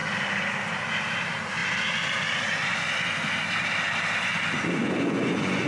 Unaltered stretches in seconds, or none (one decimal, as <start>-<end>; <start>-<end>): 0.0-4.8